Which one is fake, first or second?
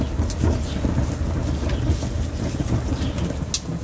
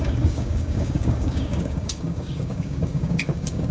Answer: second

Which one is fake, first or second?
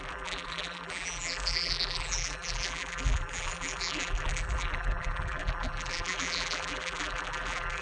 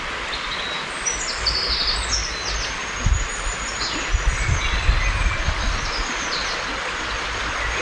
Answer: first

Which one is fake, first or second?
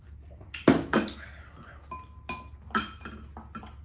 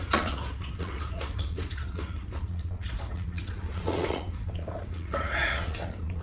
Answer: second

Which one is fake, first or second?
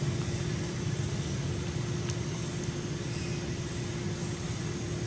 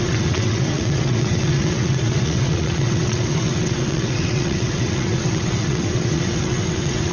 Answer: second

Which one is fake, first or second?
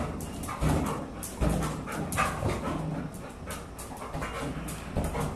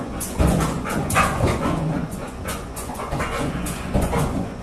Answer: second